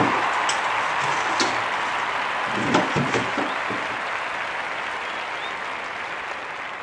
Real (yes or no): yes